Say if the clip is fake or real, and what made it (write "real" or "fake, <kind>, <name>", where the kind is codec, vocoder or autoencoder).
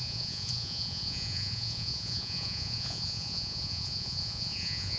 fake, vocoder, Vocos